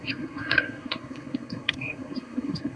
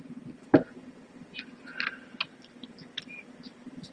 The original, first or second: second